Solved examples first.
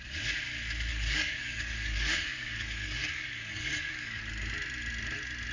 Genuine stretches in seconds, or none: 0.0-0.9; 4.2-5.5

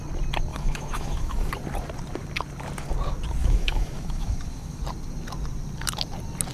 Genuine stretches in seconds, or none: 0.0-0.5; 1.5-3.4; 4.8-6.5

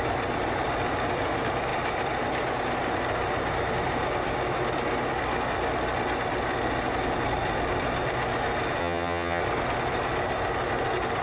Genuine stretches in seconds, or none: 0.0-8.8; 9.4-11.2

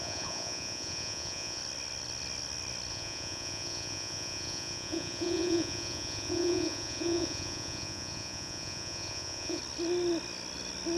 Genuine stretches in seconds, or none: 1.6-2.9; 9.6-11.0

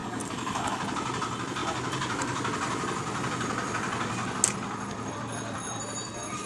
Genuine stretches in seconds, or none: 0.8-6.5